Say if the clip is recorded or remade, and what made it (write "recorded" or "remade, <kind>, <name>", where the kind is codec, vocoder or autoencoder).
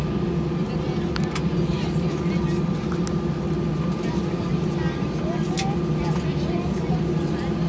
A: recorded